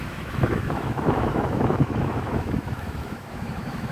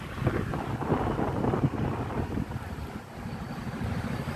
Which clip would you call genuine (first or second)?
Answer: second